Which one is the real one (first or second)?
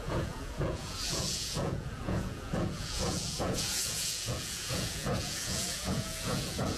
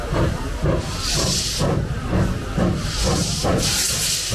second